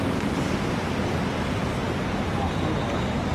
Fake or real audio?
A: real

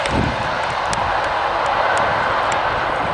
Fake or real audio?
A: real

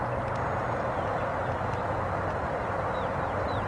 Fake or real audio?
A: real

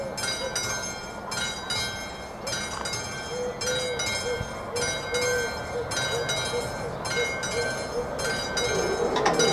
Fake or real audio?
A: real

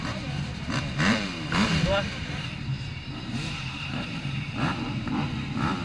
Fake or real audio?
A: fake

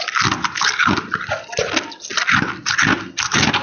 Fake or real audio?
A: real